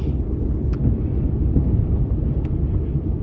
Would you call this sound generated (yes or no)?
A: no